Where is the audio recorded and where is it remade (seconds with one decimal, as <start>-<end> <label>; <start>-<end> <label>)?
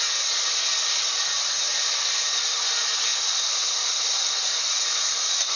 0.0-1.7 recorded; 1.7-2.3 remade; 2.3-3.1 recorded; 3.1-4.5 remade; 4.5-5.6 recorded